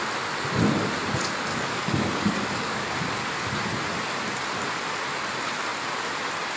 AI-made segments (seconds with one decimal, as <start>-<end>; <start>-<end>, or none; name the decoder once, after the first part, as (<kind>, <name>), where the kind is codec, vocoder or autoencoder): 1.5-2.9 (codec, DAC)